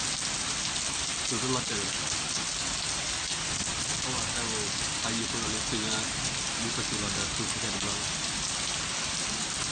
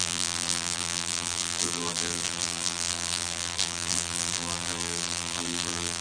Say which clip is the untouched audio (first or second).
first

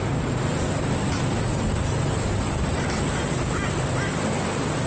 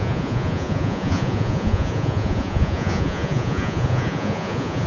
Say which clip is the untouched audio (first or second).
first